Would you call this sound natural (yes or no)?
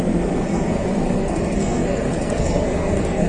no